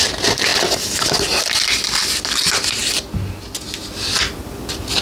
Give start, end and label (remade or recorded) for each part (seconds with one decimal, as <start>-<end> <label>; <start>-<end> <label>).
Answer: 0.0-5.0 recorded